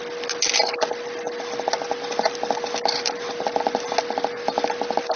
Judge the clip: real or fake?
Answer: real